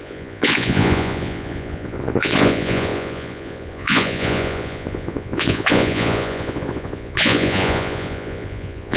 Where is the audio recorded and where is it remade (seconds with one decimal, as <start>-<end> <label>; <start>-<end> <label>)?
0.0-9.0 remade